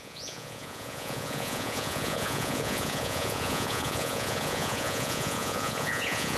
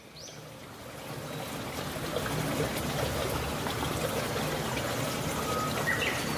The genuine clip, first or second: second